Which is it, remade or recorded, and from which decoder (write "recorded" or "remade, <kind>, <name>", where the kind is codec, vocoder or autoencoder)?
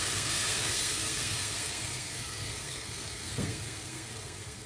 remade, codec, SNAC